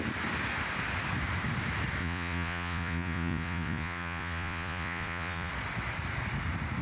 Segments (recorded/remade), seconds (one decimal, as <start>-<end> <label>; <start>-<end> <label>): 0.0-2.0 recorded; 2.0-5.5 remade; 5.5-6.8 recorded